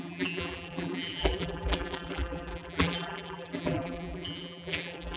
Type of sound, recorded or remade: remade